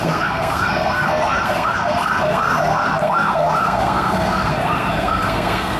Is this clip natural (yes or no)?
no